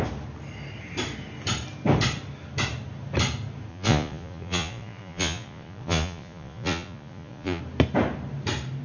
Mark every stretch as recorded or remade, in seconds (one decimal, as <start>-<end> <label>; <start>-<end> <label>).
0.0-3.7 recorded; 3.7-7.6 remade; 7.6-8.8 recorded